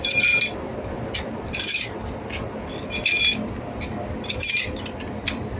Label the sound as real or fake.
real